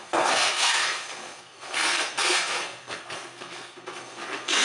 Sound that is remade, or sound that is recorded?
remade